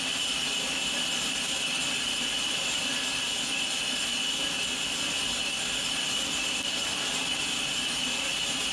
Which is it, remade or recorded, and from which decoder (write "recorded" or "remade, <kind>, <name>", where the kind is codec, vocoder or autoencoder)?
recorded